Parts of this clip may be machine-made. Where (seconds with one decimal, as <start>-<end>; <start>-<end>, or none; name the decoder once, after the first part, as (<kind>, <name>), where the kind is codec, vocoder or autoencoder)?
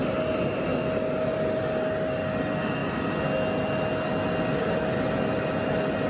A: none